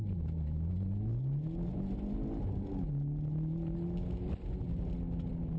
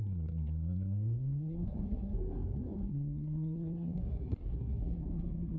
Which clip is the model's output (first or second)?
second